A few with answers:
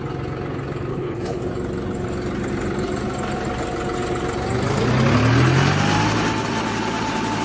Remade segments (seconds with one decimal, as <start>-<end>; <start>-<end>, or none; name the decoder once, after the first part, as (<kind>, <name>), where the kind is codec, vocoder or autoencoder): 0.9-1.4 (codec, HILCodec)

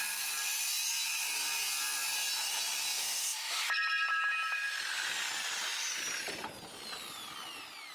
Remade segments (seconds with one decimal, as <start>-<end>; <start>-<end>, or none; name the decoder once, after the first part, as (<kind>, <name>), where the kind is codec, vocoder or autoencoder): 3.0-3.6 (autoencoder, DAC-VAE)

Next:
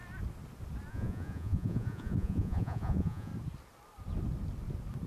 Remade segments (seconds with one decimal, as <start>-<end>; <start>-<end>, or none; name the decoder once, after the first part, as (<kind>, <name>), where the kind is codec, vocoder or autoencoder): 0.9-3.3 (vocoder, Vocos)

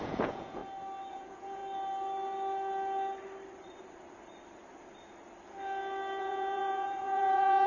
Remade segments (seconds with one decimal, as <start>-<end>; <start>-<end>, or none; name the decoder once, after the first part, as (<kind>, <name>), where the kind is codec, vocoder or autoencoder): 0.0-0.6 (vocoder, Vocos); 1.1-1.6; 6.2-7.7

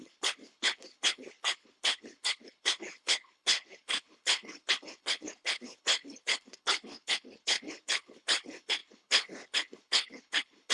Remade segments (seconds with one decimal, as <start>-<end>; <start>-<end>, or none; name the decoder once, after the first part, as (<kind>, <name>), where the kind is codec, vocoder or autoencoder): 0.0-10.7 (codec, HILCodec)

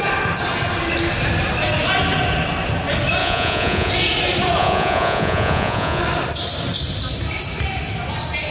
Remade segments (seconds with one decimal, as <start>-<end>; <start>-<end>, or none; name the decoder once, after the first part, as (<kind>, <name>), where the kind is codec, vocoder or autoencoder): 3.2-3.9 (vocoder, Vocos); 4.6-6.0

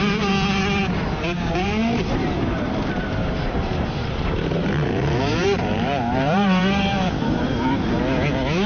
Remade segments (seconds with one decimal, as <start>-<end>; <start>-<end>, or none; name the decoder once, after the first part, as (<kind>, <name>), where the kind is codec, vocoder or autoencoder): 3.2-8.0 (vocoder, BigVGAN v2)

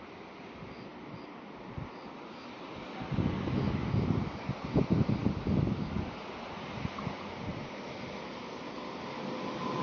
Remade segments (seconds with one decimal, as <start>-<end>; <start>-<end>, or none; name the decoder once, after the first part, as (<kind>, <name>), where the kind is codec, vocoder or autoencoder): none